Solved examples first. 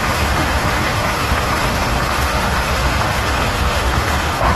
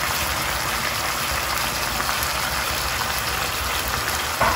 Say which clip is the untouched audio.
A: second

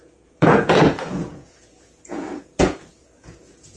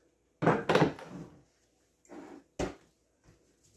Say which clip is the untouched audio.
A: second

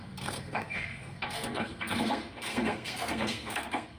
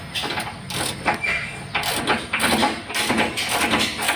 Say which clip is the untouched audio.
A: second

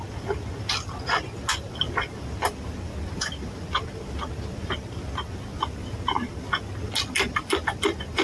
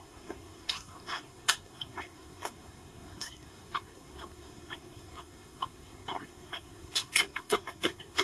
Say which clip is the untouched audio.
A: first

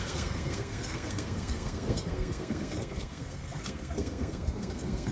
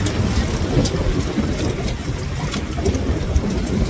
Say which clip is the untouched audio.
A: second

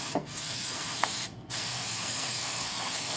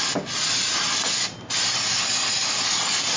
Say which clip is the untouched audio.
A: second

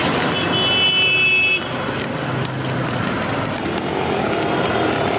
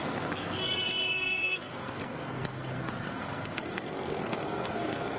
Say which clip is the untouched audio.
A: first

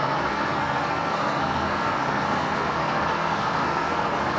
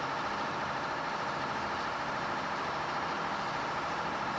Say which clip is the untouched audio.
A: second